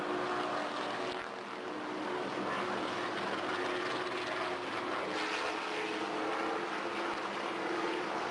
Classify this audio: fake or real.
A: real